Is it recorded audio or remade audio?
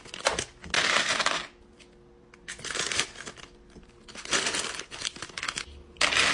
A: recorded